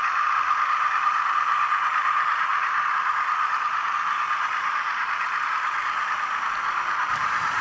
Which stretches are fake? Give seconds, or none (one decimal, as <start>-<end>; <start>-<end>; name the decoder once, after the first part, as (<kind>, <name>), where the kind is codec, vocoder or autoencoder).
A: none

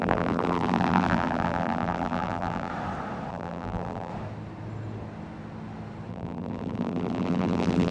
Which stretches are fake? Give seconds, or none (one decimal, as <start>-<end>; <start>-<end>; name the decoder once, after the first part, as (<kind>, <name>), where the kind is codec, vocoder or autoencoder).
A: 0.0-2.7 (vocoder, BigVGAN v2); 3.3-4.1; 6.1-7.9

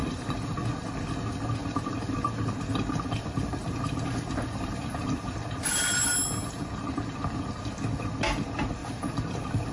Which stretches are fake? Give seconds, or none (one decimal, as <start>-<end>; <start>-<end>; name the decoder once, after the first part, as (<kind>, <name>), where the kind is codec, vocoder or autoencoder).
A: 0.0-0.7 (vocoder, BigVGAN v2); 1.6-5.6; 8.8-9.7

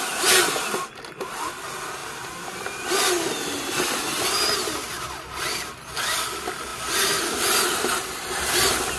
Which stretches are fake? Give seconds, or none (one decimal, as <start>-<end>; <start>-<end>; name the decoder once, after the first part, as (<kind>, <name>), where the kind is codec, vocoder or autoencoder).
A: 6.7-7.2 (vocoder, BigVGAN v2)

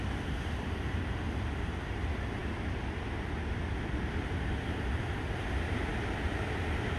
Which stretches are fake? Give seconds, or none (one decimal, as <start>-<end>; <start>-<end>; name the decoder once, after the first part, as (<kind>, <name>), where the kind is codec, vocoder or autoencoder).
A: 0.0-5.9 (vocoder, BigVGAN v2)

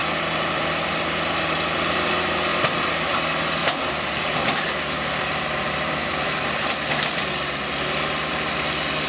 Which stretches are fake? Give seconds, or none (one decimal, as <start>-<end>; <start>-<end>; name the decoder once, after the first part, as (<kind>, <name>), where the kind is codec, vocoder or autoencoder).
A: 0.0-0.7 (vocoder, BigVGAN v2); 2.5-3.1; 3.6-6.7

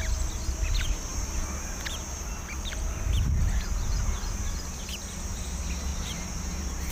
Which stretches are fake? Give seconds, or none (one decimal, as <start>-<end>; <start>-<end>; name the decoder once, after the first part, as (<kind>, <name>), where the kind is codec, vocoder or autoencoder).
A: 5.9-6.9 (vocoder, BigVGAN v2)